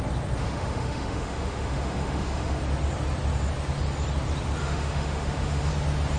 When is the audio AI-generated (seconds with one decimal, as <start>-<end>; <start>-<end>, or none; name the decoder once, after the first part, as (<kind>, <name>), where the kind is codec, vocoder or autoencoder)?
0.4-2.6 (autoencoder, DAC-VAE); 4.6-5.7